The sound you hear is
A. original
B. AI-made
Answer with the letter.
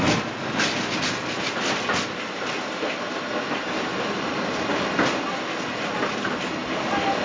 A